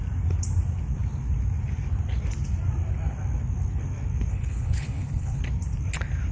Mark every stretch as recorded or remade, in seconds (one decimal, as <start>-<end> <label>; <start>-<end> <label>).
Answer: 0.0-4.3 recorded; 4.3-5.4 remade; 5.4-6.3 recorded